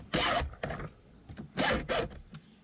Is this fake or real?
real